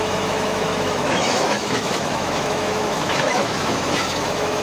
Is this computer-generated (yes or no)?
yes